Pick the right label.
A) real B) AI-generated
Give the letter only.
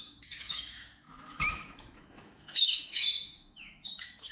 B